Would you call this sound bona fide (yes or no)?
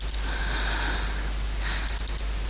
yes